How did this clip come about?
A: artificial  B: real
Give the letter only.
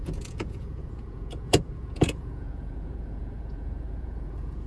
A